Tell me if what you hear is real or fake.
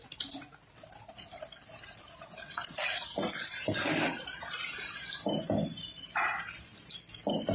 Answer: real